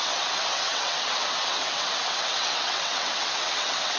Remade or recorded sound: remade